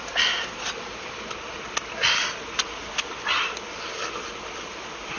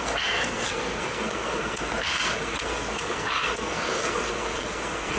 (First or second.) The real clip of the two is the first